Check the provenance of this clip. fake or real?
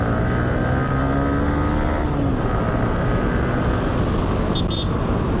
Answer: real